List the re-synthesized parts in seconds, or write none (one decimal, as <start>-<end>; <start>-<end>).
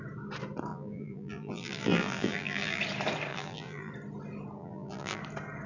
0.7-2.8; 3.3-3.9; 4.6-5.2